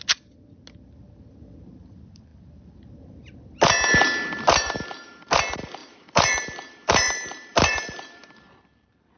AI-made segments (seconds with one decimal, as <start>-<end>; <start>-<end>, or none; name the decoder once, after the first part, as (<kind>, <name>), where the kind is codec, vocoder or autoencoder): 5.8-8.4 (vocoder, BigVGAN v2)

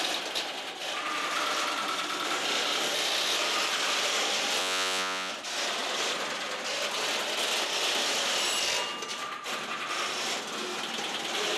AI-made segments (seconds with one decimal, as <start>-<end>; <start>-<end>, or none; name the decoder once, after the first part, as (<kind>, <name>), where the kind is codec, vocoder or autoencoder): 4.6-5.3 (vocoder, Vocos)

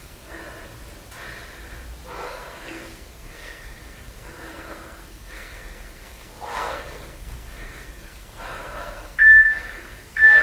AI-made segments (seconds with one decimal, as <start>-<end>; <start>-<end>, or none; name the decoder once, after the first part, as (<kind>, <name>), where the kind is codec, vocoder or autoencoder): 0.0-0.4 (codec, SNAC); 2.1-10.4

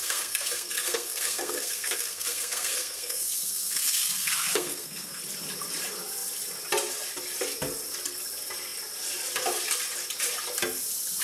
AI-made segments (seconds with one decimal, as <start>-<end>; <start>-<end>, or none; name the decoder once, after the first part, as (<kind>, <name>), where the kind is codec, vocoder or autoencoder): 0.0-5.2 (codec, SNAC)

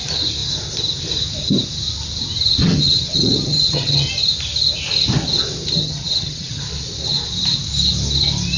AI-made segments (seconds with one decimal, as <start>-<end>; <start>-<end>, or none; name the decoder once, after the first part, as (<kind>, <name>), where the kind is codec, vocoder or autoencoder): 2.6-4.1 (vocoder, HiFi-GAN); 5.8-6.6